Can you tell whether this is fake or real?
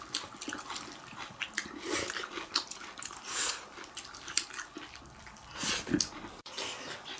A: real